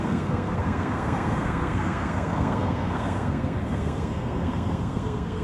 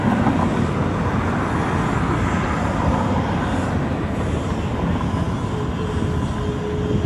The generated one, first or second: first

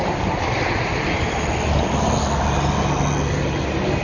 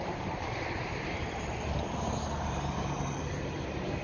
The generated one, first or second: second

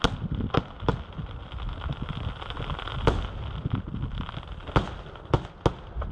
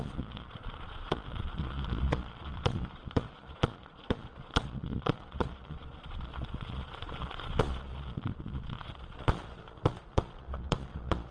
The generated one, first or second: second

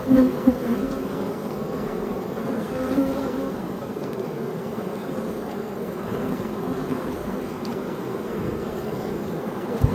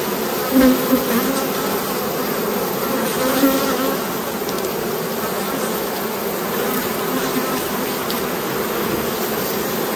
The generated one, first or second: first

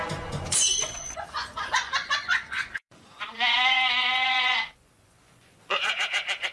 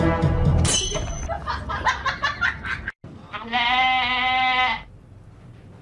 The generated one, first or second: first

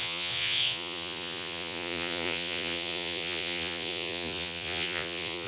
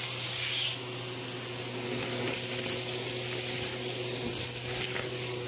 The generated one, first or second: first